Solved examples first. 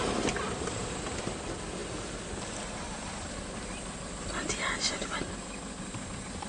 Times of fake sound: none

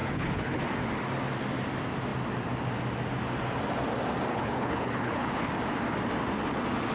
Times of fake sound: 0.0-0.6 (codec, HILCodec); 4.3-5.5

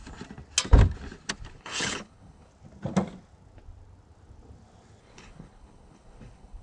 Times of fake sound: 1.6-2.5 (codec, HILCodec); 5.0-6.6